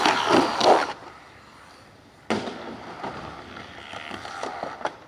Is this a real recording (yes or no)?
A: no